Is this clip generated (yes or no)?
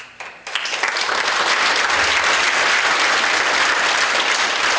no